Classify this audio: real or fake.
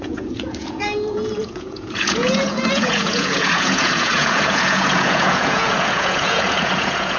fake